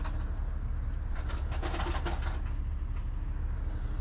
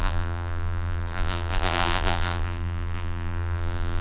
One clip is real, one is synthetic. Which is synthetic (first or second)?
second